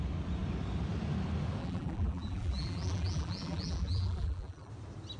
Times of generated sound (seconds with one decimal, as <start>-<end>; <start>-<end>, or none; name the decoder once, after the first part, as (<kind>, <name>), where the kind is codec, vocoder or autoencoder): 1.6-4.7 (vocoder, BigVGAN v2)